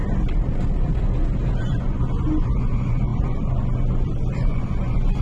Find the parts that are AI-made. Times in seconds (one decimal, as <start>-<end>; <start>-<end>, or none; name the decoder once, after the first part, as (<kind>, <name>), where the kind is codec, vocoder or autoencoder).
1.6-5.2 (vocoder, Vocos)